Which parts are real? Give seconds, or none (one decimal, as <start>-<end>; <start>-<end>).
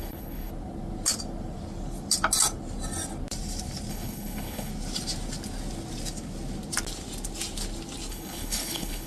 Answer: 0.5-3.9; 4.7-8.1